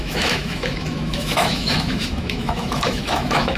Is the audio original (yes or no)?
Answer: no